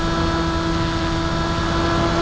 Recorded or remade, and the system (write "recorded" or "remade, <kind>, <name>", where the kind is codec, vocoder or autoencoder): recorded